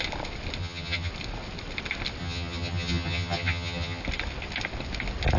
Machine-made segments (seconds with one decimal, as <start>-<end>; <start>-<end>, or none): 0.6-1.1; 2.2-4.0